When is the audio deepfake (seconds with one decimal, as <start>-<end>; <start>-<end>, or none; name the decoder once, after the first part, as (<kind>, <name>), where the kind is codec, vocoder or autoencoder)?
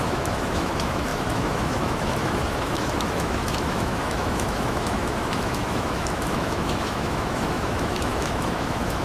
0.0-9.0 (autoencoder, DAC-VAE)